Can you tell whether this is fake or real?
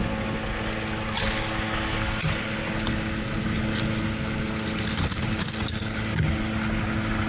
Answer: real